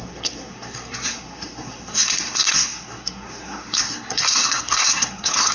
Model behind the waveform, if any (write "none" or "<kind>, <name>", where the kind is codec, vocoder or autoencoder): codec, SNAC